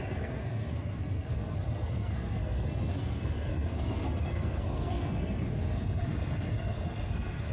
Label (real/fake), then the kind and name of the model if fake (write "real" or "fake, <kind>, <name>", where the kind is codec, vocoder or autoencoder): fake, codec, SNAC